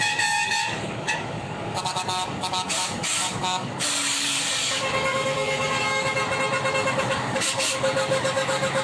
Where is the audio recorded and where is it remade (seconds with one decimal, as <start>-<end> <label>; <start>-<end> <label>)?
0.0-6.2 remade; 6.2-6.7 recorded; 6.7-8.8 remade